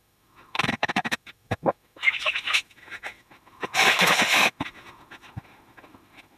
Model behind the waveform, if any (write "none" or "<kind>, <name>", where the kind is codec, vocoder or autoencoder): autoencoder, DAC-VAE